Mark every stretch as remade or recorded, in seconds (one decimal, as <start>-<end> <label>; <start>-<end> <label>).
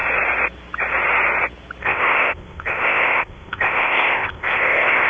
0.0-1.8 recorded; 1.8-5.1 remade